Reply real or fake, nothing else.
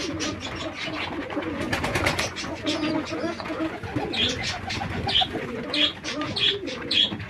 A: fake